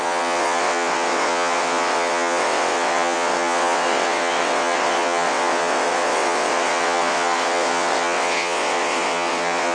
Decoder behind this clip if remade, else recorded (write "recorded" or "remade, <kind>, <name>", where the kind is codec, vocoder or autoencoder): remade, vocoder, WaveNeXt